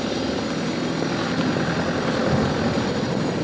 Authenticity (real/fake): real